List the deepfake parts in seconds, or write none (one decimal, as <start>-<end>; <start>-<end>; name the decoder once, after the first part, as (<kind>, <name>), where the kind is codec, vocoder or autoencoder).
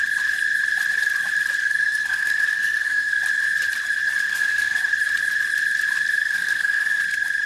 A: 1.6-3.2 (codec, SNAC); 4.3-4.8; 6.2-7.0